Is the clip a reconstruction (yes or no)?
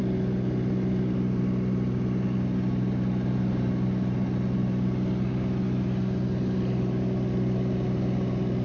no